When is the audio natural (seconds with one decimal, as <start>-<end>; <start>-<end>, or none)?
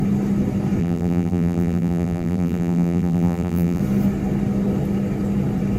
0.0-0.8; 3.8-5.8